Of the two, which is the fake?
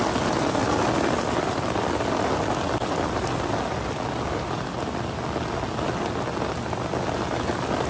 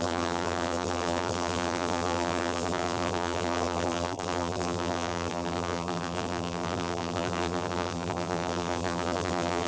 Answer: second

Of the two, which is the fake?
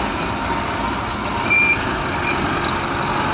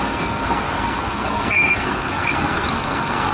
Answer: second